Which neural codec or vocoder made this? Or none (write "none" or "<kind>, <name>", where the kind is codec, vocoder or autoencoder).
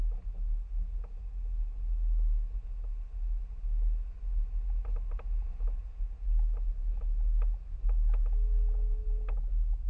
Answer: none